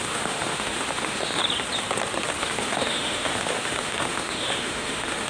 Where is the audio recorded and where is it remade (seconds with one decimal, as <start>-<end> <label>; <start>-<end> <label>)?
0.0-1.4 remade; 1.4-2.4 recorded; 2.4-5.3 remade